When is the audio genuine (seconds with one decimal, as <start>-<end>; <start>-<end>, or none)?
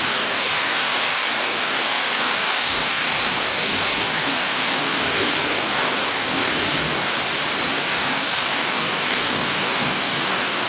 7.1-7.7